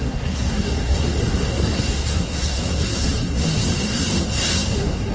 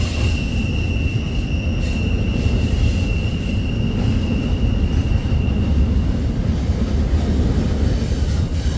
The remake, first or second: first